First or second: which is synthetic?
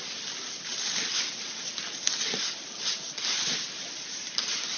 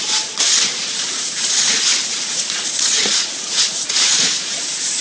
second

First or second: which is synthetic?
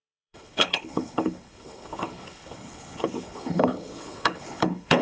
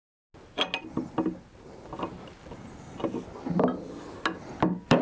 first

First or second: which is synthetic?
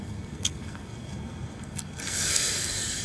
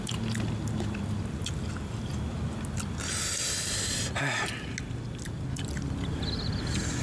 first